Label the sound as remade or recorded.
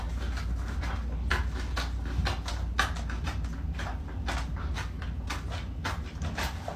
recorded